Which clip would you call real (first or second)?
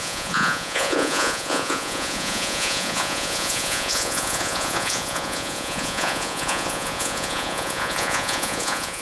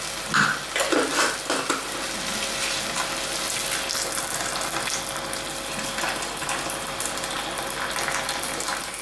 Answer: second